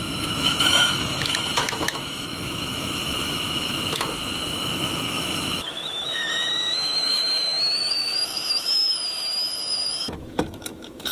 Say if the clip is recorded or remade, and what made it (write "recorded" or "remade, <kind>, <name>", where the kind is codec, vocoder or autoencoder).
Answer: remade, autoencoder, DAC-VAE